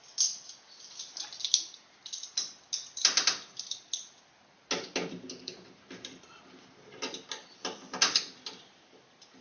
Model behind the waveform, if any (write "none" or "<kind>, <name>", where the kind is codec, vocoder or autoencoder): none